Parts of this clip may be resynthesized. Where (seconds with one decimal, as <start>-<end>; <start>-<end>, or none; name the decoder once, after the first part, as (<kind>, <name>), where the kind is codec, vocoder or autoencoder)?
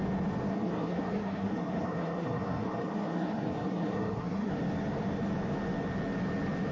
0.5-4.5 (codec, SNAC)